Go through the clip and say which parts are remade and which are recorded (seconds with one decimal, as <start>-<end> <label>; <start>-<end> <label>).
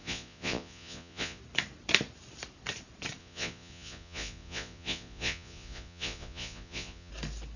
0.0-1.4 remade; 1.4-3.2 recorded; 3.2-7.1 remade; 7.1-7.6 recorded